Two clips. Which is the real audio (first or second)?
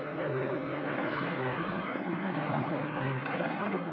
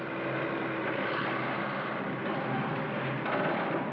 second